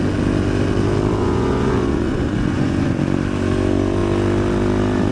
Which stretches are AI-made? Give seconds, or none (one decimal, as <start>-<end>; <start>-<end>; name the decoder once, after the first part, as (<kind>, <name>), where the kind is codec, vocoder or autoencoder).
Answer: 1.2-3.0 (vocoder, Vocos)